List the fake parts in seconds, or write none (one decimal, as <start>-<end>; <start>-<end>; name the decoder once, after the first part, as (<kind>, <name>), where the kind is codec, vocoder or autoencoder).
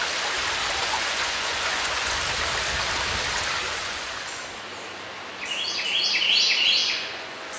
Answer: 0.8-2.2 (vocoder, Vocos); 3.6-4.4; 6.8-7.6